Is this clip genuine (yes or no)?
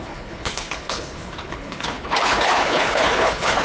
no